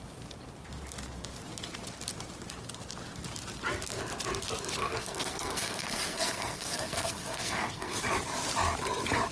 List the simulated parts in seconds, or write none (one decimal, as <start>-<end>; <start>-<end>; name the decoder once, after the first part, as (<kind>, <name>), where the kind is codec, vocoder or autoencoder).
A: 4.8-8.0 (codec, SNAC)

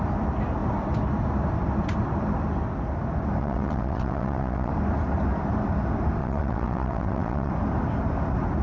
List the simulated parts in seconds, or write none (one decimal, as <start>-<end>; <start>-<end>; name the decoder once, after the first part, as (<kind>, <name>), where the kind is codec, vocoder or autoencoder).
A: 3.4-4.7 (vocoder, WaveNeXt); 6.2-7.5

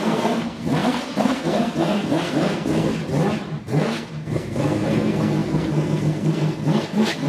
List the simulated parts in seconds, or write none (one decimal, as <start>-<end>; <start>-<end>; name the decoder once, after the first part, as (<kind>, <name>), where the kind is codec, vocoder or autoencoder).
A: 0.0-3.0 (codec, SNAC); 3.6-7.3

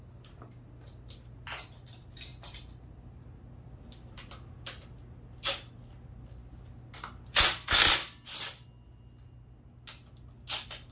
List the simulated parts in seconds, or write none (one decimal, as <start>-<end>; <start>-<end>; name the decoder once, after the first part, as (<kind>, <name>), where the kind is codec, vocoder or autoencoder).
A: none

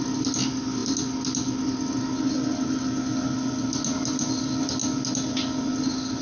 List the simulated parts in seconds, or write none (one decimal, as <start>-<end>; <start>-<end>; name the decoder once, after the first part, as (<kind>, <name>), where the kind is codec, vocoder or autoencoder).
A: none

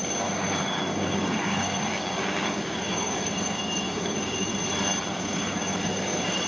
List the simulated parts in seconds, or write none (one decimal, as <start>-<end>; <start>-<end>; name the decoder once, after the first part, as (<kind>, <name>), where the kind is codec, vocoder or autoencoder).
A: 0.0-4.5 (codec, DAC); 5.1-6.5